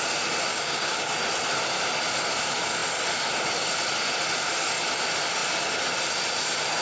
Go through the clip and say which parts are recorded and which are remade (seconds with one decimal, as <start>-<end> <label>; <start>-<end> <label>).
0.0-0.5 recorded; 0.5-1.1 remade; 1.1-6.8 recorded